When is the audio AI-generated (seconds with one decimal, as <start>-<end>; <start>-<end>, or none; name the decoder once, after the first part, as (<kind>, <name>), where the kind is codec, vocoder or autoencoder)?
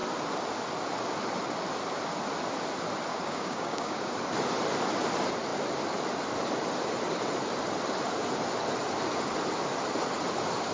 3.1-4.1 (codec, DAC)